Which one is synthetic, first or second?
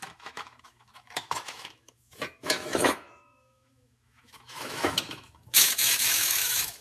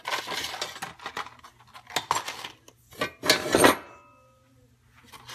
first